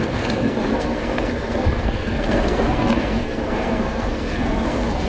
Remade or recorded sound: remade